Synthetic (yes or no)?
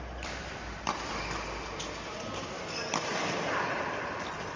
yes